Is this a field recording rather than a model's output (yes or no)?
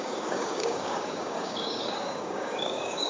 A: no